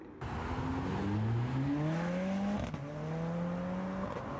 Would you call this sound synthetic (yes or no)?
no